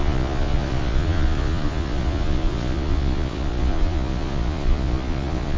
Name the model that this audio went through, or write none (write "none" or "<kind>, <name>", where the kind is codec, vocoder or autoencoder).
vocoder, Vocos